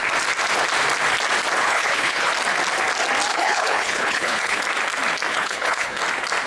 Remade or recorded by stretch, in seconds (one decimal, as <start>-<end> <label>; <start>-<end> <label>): 0.0-1.6 recorded; 1.6-2.3 remade; 2.3-3.3 recorded; 3.3-4.6 remade; 4.6-5.3 recorded; 5.3-6.0 remade; 6.0-6.5 recorded